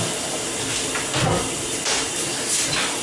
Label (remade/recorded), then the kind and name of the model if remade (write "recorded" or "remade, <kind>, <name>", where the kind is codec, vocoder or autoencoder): recorded